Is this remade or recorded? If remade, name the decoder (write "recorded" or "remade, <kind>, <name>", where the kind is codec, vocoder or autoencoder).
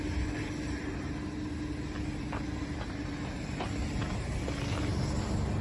recorded